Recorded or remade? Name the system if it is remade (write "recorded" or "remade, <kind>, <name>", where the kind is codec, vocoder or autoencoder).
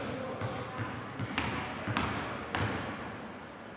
recorded